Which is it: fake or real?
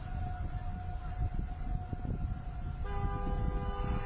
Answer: real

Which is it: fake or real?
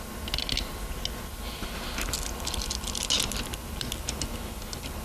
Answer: real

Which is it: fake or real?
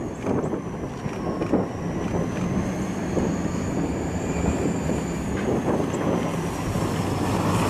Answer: real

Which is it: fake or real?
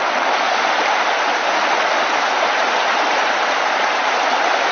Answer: real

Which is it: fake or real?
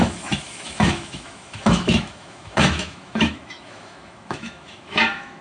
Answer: fake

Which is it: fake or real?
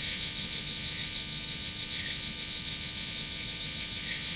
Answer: fake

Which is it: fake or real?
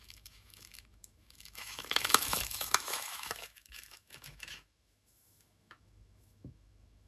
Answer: fake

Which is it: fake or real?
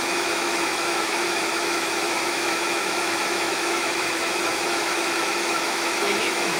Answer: fake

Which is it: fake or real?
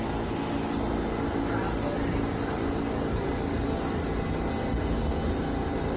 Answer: real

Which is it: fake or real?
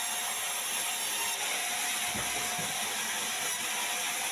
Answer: real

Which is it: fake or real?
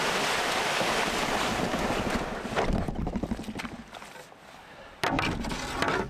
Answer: real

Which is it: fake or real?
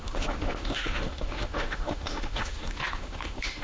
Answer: fake